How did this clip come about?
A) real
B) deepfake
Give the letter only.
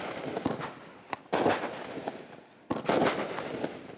A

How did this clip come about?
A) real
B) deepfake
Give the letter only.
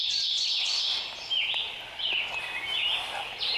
A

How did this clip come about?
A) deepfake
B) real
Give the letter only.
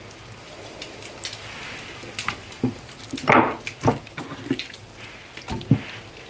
B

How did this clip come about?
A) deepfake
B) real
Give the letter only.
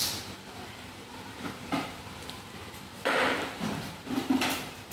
A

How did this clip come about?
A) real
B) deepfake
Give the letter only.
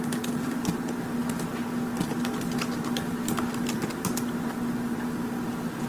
A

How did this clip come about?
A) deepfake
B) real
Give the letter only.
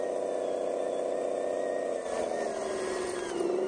B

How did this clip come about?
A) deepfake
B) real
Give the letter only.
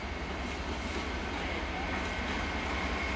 B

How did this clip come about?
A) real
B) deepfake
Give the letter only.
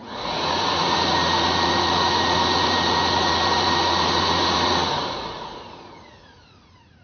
B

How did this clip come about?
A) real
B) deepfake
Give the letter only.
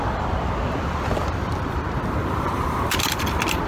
B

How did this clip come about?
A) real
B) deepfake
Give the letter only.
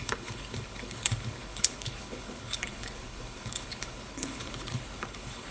B